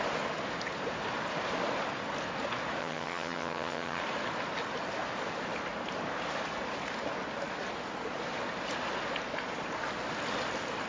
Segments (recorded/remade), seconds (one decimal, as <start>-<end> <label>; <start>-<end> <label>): 0.0-2.8 recorded; 2.8-4.0 remade; 4.0-10.9 recorded

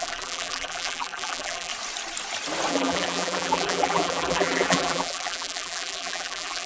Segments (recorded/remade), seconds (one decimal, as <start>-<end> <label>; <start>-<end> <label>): 0.0-1.7 remade; 1.7-2.7 recorded; 2.7-6.7 remade